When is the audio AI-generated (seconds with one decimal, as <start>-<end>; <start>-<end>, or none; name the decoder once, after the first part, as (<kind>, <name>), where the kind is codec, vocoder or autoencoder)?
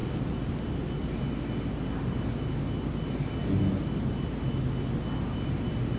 none